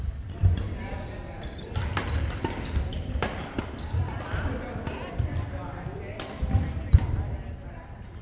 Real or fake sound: real